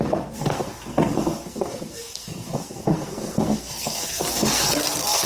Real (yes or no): no